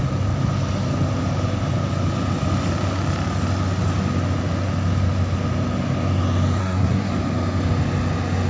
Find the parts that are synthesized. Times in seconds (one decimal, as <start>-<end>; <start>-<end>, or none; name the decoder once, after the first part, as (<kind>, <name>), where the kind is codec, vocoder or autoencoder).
6.6-7.1 (codec, SNAC)